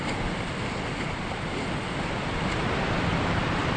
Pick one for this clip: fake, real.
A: real